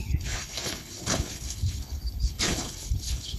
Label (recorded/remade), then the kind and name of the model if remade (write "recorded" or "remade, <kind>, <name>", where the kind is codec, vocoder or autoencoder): remade, codec, HILCodec